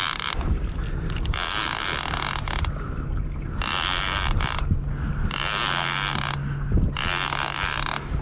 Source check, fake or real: real